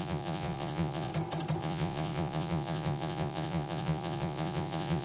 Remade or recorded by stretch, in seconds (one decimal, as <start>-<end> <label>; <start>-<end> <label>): 0.0-1.1 remade; 1.1-1.6 recorded; 1.6-5.0 remade